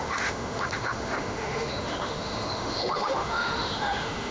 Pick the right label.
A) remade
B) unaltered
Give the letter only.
A